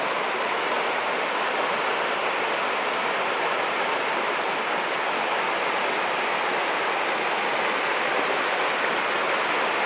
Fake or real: real